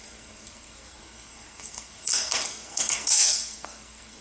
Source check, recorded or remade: remade